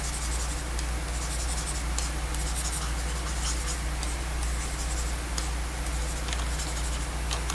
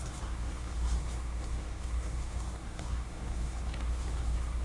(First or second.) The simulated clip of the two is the second